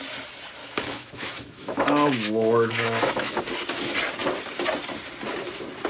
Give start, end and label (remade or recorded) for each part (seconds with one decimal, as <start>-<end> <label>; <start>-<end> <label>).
0.0-0.6 recorded; 0.6-3.4 remade; 3.4-5.9 recorded